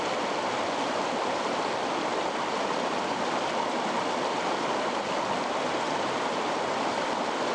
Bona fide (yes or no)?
yes